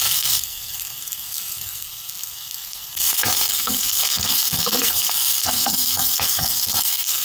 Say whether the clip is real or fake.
fake